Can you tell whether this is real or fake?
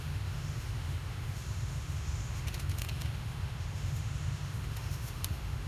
fake